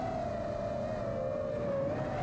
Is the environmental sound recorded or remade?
recorded